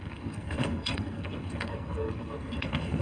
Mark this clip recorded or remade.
remade